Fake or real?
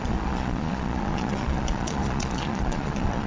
fake